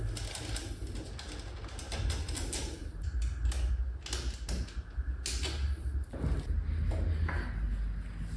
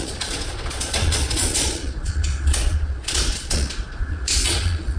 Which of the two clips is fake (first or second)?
second